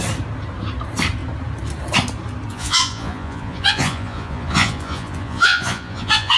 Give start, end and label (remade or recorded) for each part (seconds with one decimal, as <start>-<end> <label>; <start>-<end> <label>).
0.0-2.5 recorded; 2.5-6.4 remade